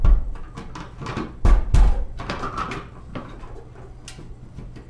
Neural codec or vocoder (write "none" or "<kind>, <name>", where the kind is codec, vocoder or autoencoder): none